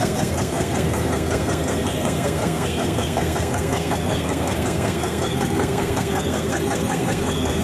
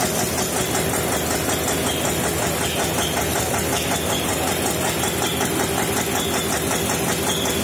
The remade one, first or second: first